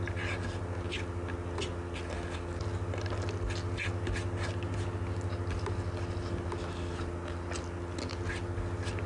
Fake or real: real